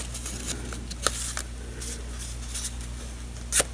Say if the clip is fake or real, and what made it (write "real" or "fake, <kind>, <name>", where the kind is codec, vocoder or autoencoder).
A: real